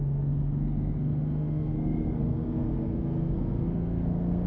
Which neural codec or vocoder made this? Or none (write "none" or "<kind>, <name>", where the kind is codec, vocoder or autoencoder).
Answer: codec, SNAC